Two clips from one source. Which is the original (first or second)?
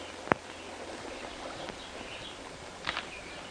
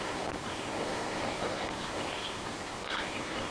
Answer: first